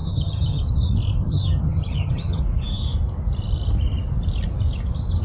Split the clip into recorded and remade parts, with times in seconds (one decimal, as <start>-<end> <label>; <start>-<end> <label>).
0.0-0.6 remade; 0.6-1.2 recorded; 1.2-2.4 remade; 2.4-5.2 recorded